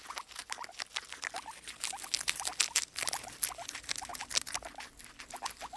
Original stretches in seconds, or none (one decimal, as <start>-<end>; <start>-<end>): 0.0-5.8